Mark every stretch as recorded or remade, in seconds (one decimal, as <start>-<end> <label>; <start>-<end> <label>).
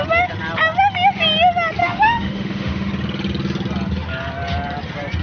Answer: 0.0-1.8 recorded; 1.8-2.9 remade; 2.9-5.2 recorded